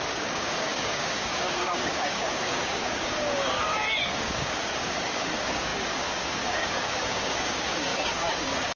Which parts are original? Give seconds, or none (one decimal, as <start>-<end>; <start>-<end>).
none